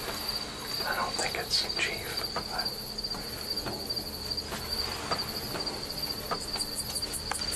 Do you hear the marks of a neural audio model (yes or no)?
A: no